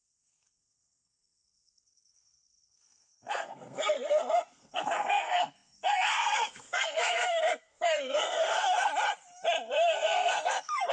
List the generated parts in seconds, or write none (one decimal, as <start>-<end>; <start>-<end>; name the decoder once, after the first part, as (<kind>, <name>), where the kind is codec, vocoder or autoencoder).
0.0-8.9 (codec, SNAC); 9.7-10.9